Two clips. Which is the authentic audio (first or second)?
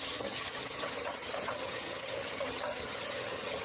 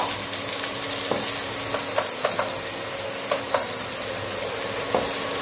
second